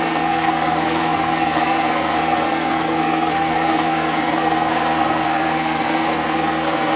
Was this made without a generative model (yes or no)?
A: no